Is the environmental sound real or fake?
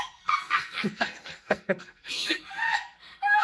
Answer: fake